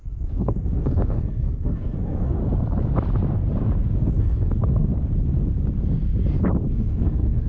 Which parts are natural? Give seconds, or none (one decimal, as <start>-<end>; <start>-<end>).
2.4-4.2; 4.9-6.7